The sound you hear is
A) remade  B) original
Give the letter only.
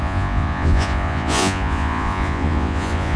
A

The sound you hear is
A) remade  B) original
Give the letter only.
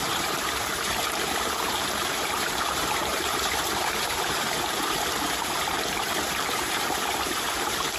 A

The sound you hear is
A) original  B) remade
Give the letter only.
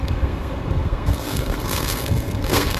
B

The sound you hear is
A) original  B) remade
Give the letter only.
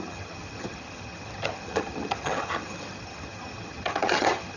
B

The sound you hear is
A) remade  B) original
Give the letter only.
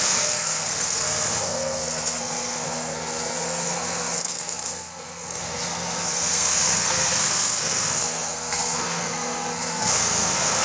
A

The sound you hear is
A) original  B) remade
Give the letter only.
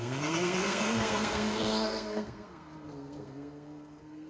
B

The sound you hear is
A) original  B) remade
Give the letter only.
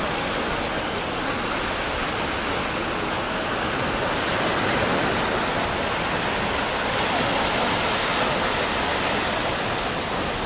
A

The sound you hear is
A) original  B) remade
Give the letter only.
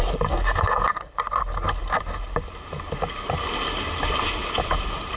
A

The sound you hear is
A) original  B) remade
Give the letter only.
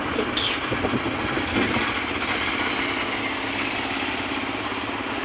A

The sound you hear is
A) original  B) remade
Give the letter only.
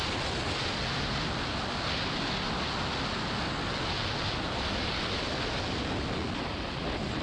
A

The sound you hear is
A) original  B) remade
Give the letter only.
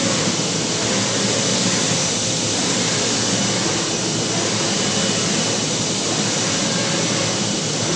A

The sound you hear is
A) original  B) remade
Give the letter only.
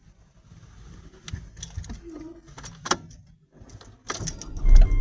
A